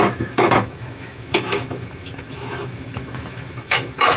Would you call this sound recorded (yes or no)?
no